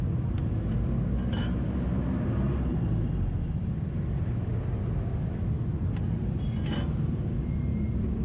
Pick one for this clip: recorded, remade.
recorded